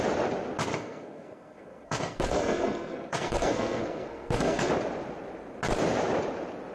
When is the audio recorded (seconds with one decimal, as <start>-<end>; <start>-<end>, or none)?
0.0-0.7; 4.7-6.7